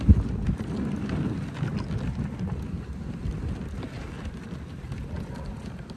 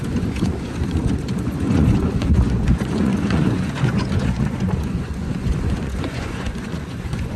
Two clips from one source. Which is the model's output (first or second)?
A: second